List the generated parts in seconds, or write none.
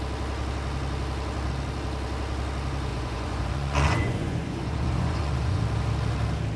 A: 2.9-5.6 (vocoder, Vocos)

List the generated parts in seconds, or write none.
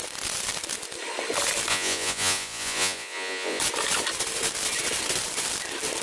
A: 1.7-3.6 (vocoder, Vocos)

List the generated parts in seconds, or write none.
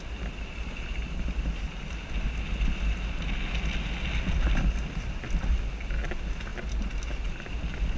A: none